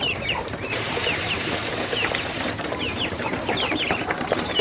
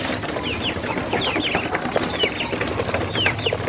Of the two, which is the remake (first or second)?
first